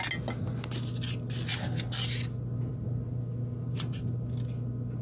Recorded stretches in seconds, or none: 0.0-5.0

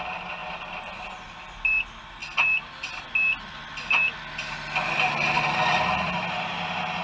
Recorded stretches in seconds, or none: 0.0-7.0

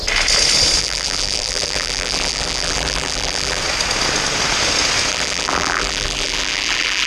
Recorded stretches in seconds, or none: 0.0-0.8; 3.6-5.1